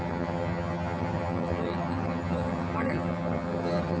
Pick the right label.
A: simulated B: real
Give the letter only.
A